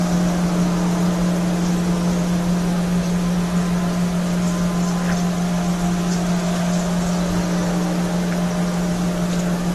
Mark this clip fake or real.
real